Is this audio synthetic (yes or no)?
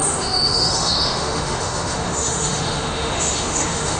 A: yes